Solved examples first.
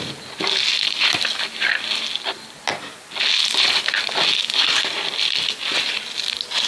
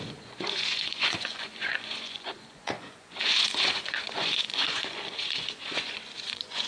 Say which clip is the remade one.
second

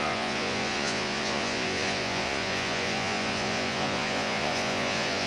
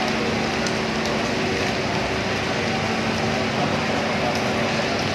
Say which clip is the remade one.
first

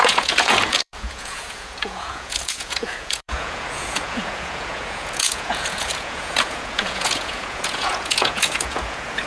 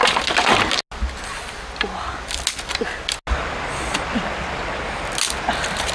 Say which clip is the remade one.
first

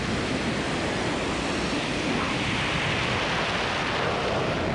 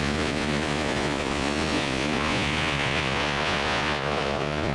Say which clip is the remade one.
second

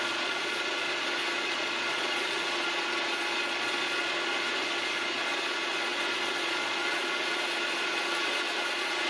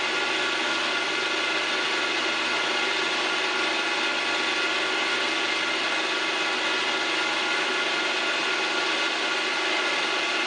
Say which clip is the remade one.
first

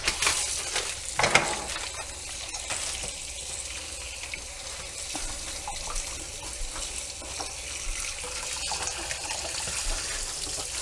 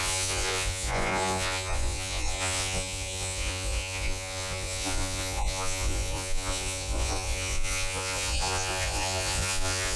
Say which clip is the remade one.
second